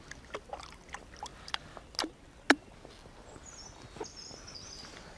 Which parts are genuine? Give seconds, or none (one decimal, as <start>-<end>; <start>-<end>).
0.0-5.2